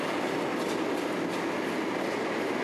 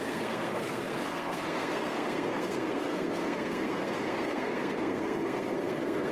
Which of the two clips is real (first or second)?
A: first